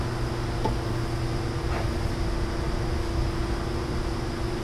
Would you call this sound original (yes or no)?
yes